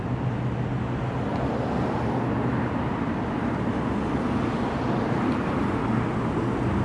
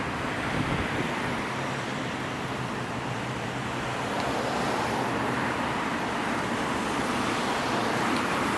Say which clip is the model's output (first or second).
second